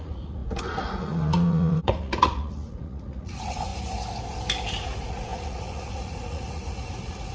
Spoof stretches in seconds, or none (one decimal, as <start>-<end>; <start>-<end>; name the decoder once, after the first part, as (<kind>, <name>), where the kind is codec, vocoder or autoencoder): 0.0-3.7 (vocoder, Vocos); 4.7-7.3

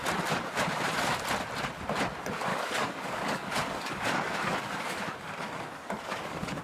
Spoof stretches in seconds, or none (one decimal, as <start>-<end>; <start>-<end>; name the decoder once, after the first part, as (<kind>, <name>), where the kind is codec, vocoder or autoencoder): 2.5-6.6 (codec, DAC)

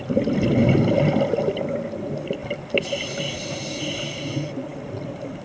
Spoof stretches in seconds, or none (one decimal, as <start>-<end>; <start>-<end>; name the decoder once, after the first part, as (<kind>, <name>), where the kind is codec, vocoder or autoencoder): none

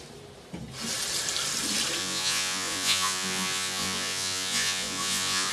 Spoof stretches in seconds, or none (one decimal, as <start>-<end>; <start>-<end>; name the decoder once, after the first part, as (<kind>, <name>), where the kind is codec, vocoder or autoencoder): 2.0-5.5 (vocoder, Vocos)

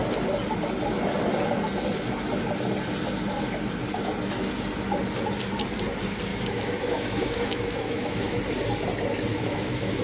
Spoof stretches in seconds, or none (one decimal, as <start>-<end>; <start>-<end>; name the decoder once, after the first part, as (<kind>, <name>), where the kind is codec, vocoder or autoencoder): 6.3-8.4 (autoencoder, DAC-VAE); 9.3-10.0

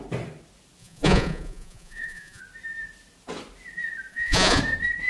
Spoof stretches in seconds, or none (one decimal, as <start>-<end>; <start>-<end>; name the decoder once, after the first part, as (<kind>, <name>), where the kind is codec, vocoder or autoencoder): 0.8-2.4 (vocoder, Vocos); 4.1-4.6